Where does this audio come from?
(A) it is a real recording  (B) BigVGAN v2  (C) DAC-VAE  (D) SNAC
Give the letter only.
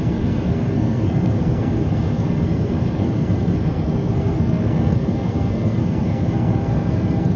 D